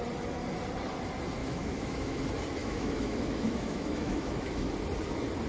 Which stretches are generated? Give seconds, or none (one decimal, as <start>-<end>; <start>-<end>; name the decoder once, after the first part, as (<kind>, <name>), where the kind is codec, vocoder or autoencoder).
1.4-2.2 (autoencoder, DAC-VAE); 2.6-4.7